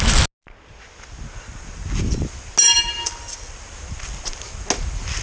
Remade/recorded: recorded